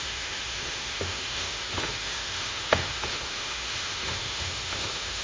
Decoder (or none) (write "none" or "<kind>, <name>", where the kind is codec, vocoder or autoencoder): autoencoder, DAC-VAE